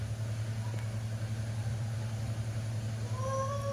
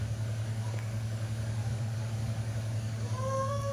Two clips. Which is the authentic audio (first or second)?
first